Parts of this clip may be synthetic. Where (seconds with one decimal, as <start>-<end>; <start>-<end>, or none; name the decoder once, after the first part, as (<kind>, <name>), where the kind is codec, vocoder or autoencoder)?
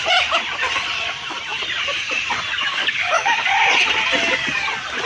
2.7-3.5 (codec, DAC)